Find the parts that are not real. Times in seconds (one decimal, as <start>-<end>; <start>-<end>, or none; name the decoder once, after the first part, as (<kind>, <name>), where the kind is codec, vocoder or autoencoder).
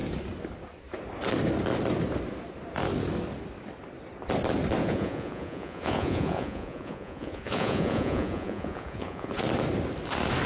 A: 4.8-9.4 (vocoder, Vocos)